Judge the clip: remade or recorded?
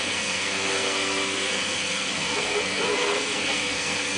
remade